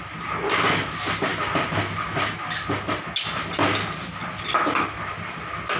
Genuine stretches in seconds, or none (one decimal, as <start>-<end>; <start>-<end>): 0.0-5.8